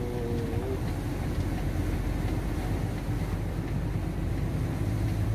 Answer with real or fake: real